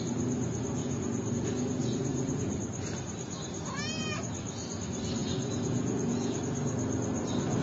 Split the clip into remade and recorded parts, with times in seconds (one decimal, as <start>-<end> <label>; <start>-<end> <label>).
0.0-0.8 recorded; 0.8-1.3 remade; 1.3-1.8 recorded; 1.8-2.6 remade; 2.6-5.2 recorded; 5.2-6.4 remade; 6.4-7.6 recorded